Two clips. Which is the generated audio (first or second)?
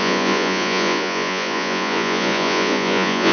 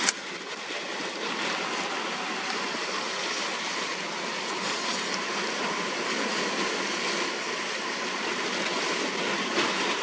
first